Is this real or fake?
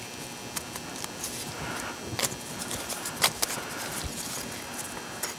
real